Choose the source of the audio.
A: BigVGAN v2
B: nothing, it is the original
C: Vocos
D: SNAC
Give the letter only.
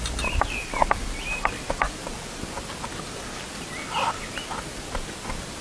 B